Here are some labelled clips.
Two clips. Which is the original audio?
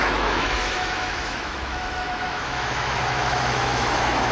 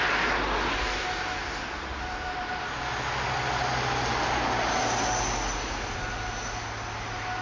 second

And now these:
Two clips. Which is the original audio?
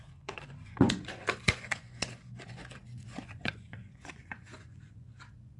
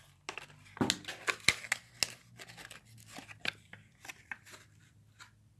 second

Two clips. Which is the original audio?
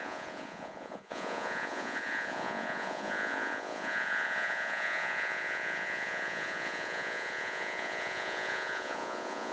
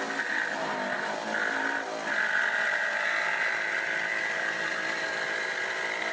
second